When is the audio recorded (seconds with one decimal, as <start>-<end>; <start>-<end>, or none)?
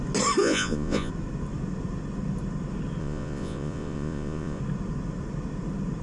0.0-0.4; 1.1-3.0; 4.6-6.0